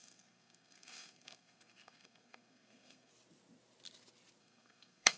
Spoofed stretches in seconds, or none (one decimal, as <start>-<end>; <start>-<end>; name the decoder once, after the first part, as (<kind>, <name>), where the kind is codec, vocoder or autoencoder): 0.0-3.1 (codec, SNAC); 4.4-5.2

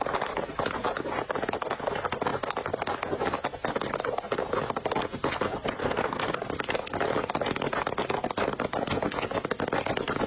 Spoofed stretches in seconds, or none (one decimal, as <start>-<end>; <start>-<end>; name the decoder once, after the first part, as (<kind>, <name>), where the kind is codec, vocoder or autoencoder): 5.8-6.5 (codec, SNAC)

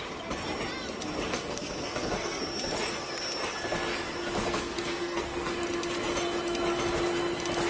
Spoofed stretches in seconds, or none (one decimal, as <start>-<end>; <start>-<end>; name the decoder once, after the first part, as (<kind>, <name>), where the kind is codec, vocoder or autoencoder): 1.3-2.4 (codec, SNAC); 4.4-5.5

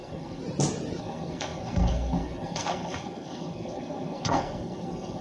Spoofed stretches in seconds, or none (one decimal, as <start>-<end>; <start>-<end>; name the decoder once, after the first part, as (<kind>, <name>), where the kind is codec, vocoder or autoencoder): 0.0-0.4 (codec, SNAC); 1.0-5.2

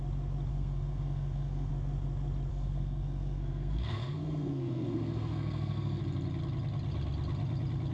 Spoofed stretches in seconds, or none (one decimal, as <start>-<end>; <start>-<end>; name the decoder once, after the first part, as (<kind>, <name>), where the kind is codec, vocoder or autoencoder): 0.5-1.7 (codec, SNAC); 2.5-6.0

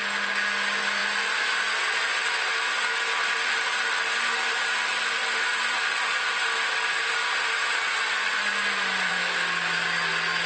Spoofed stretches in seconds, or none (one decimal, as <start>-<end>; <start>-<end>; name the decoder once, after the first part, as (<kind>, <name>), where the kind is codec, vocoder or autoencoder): none